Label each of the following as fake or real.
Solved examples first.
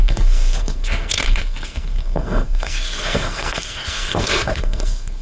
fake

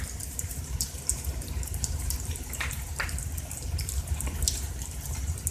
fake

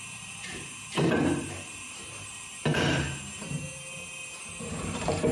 fake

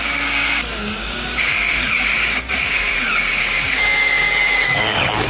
fake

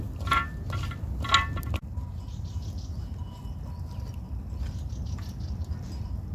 real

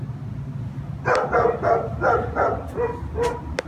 real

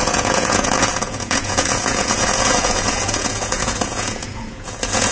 fake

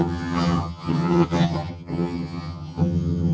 fake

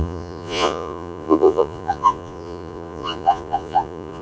fake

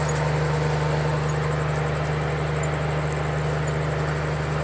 real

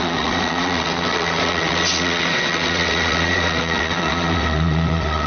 fake